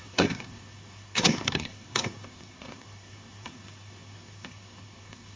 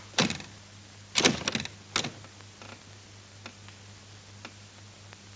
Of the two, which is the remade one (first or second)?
first